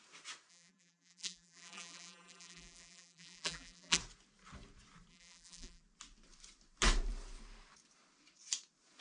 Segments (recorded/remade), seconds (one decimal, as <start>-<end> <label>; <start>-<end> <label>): 0.0-0.5 recorded; 0.5-4.0 remade; 4.0-5.1 recorded; 5.1-5.8 remade; 5.8-9.0 recorded